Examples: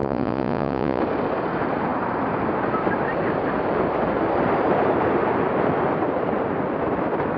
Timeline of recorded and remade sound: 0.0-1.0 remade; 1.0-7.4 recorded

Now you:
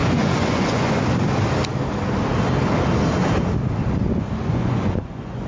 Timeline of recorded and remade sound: 0.0-1.0 remade; 1.0-4.4 recorded; 4.4-5.5 remade

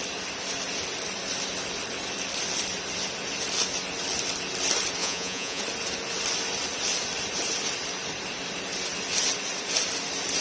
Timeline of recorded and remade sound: 0.0-5.0 recorded; 5.0-5.6 remade; 5.6-10.4 recorded

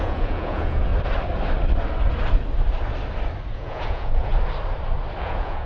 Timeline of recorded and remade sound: 0.0-0.9 remade; 0.9-3.5 recorded; 3.5-4.3 remade; 4.3-5.2 recorded; 5.2-5.7 remade

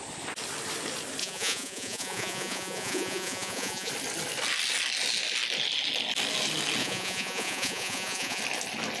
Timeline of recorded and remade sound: 0.0-1.2 recorded; 1.2-3.9 remade; 3.9-6.8 recorded; 6.8-8.4 remade; 8.4-9.0 recorded

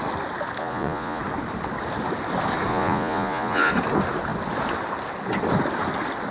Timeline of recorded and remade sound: 0.0-0.6 recorded; 0.6-1.2 remade; 1.2-2.7 recorded; 2.7-3.7 remade; 3.7-6.3 recorded